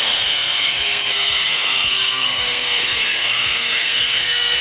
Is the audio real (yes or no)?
no